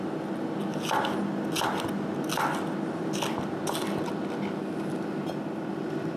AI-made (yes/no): no